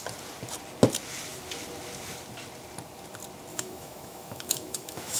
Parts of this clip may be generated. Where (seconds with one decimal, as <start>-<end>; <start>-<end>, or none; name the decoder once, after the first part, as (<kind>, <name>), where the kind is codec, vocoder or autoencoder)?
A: 3.5-5.2 (autoencoder, DAC-VAE)